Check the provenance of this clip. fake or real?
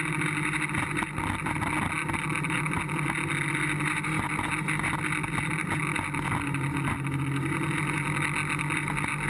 real